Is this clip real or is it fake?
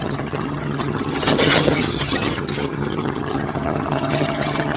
fake